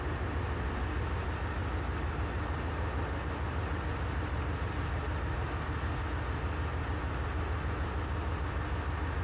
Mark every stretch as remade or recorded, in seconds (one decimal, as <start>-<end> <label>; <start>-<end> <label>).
0.0-9.2 recorded